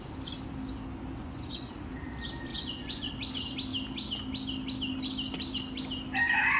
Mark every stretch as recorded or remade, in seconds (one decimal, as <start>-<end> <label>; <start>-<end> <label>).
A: 0.0-1.2 recorded; 1.2-1.7 remade; 1.7-2.5 recorded; 2.5-3.1 remade; 3.1-6.6 recorded